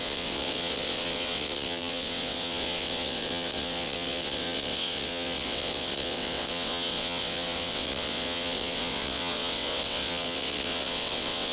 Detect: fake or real fake